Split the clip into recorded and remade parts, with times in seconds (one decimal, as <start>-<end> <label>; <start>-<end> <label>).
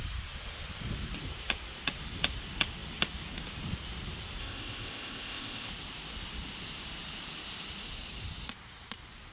0.0-4.4 recorded; 4.4-5.7 remade; 5.7-9.3 recorded